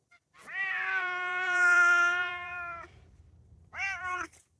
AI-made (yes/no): yes